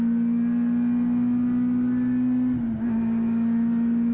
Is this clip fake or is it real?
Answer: real